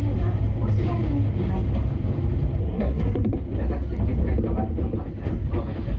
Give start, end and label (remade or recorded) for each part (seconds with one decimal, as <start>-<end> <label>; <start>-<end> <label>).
0.0-2.6 recorded; 2.6-3.4 remade; 3.4-6.0 recorded